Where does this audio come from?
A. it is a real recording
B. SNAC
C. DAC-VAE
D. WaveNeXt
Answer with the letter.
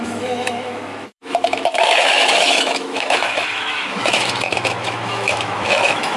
C